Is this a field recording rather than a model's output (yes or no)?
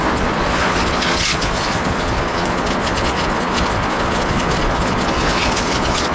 no